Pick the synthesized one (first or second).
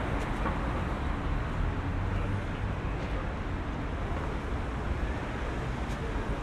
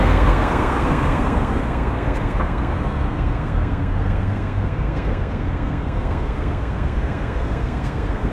second